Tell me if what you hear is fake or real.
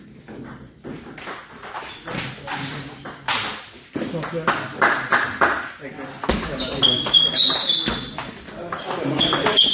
real